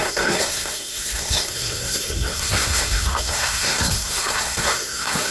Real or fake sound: fake